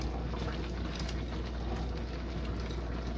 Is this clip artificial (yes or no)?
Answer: no